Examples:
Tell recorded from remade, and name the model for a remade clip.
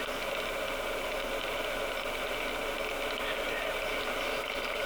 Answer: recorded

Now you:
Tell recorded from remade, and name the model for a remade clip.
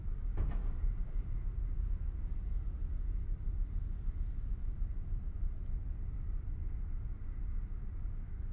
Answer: recorded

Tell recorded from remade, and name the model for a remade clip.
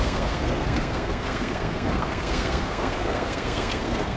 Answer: remade, codec, SNAC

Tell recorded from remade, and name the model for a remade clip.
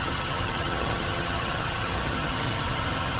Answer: remade, vocoder, HiFi-GAN